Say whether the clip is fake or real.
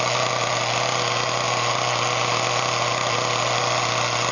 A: real